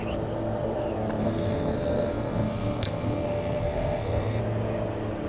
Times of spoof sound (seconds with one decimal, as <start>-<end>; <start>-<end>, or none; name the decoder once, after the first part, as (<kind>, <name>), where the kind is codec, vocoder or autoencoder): 1.2-4.4 (codec, SNAC)